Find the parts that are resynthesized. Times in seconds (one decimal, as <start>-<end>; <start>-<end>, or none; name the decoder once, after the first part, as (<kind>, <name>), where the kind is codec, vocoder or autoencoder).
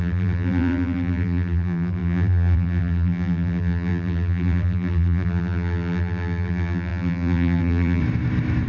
0.0-8.0 (vocoder, BigVGAN v2)